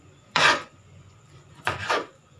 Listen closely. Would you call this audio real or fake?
fake